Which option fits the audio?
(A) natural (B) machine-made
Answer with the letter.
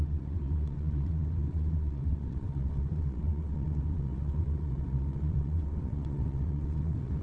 B